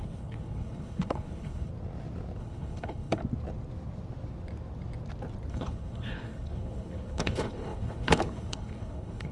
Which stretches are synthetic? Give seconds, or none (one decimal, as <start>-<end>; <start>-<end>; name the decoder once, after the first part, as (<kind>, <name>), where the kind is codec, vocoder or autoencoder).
0.0-1.7 (codec, HILCodec); 2.4-3.2; 5.5-9.3

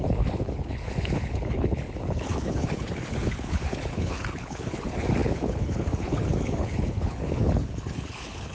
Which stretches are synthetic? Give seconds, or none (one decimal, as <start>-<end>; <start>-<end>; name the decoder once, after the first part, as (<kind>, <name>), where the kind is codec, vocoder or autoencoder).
0.0-8.5 (codec, HILCodec)

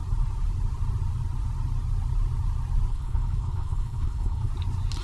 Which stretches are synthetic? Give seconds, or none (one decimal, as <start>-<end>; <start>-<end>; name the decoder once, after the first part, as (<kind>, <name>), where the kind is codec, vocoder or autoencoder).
2.9-4.5 (codec, HILCodec)

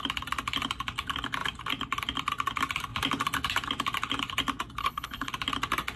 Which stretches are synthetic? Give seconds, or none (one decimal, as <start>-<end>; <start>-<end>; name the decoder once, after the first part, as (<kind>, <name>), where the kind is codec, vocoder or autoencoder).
4.8-5.3 (codec, HILCodec)

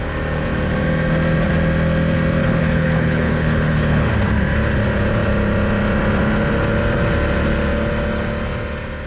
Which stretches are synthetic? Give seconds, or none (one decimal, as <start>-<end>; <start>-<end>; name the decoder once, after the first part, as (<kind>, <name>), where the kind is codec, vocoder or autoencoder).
2.4-4.1 (codec, HILCodec)

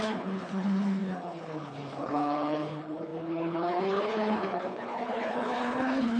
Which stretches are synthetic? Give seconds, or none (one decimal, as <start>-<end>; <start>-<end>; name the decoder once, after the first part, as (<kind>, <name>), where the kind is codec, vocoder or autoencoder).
0.0-6.2 (codec, HILCodec)

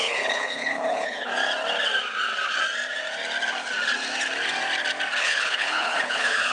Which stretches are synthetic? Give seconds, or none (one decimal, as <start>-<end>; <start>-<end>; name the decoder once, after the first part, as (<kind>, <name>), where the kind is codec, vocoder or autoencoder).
0.0-1.3 (codec, HILCodec); 5.2-6.5